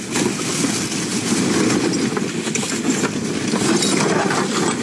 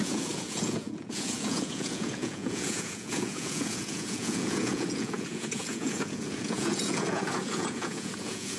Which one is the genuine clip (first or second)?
first